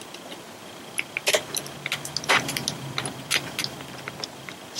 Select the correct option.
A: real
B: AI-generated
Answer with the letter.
A